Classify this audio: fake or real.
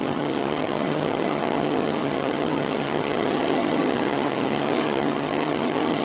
fake